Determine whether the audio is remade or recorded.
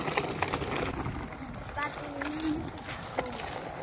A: recorded